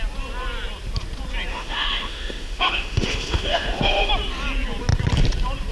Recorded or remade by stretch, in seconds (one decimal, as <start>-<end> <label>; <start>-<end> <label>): 0.0-1.5 recorded; 1.5-4.1 remade; 4.1-5.7 recorded